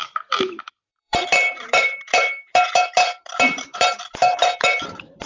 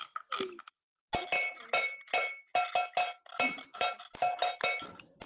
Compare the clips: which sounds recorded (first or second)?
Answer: second